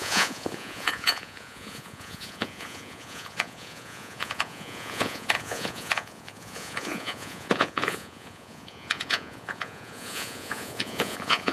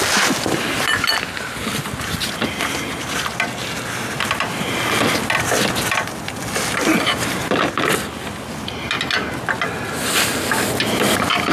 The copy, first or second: first